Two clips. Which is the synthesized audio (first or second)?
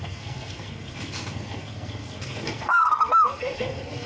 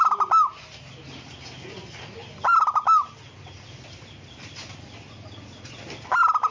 first